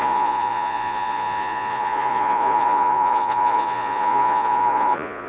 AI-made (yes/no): yes